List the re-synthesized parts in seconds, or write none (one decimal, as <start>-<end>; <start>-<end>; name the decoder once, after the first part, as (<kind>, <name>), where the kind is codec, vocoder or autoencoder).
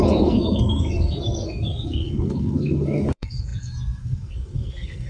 0.0-5.1 (codec, SNAC)